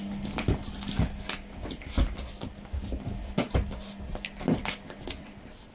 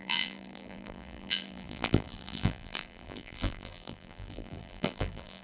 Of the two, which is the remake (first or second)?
second